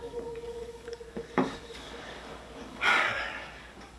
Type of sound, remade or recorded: remade